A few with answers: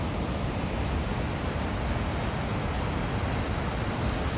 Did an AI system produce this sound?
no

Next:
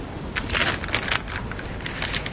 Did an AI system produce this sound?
no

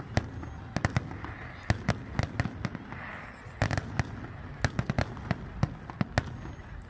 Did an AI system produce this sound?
no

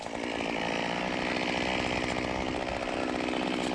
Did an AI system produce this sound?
no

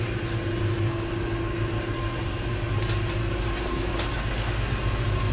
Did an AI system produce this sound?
no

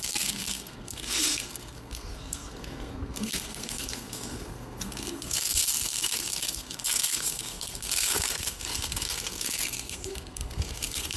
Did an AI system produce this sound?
yes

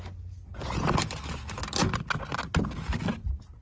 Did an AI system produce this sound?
no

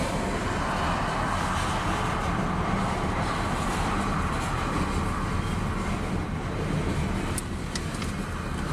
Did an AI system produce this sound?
no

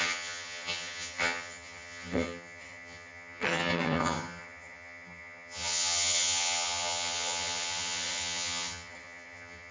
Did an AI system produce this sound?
yes